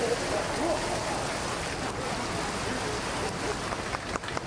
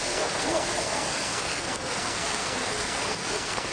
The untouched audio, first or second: first